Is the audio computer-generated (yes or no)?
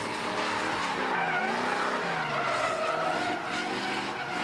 no